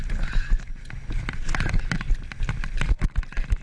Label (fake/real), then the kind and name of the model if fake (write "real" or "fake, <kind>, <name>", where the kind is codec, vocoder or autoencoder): real